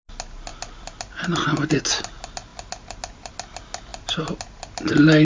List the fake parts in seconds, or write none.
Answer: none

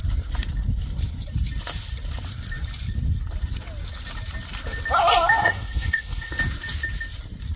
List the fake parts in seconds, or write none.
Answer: 5.4-6.3 (codec, SNAC)

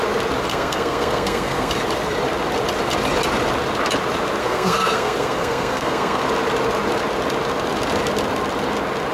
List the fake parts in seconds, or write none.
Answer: 0.5-1.7 (codec, SNAC); 4.4-6.2

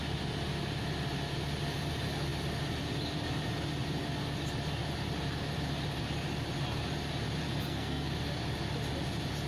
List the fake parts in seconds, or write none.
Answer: 7.4-8.1 (codec, SNAC)

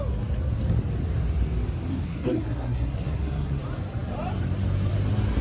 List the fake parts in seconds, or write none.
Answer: 1.9-3.6 (codec, SNAC)

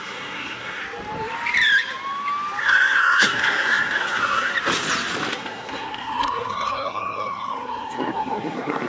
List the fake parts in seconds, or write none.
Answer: 0.0-0.8 (codec, SNAC); 2.6-4.5; 5.3-8.9

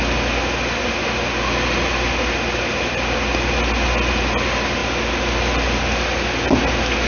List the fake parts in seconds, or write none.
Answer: none

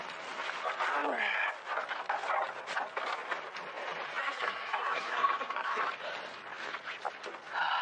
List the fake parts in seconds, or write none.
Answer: 4.2-5.8 (codec, SNAC)